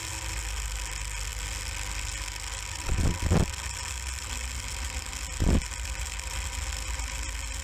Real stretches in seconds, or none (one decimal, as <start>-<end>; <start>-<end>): 0.0-7.6

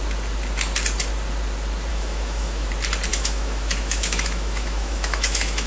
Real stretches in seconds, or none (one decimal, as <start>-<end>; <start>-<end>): 0.0-1.9; 2.7-3.1

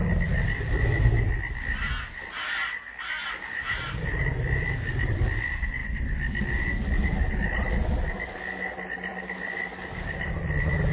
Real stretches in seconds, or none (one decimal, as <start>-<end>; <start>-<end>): 0.0-10.9

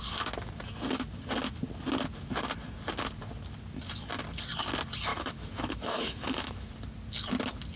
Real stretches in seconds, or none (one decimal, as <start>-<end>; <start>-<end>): 0.0-5.1; 6.7-7.8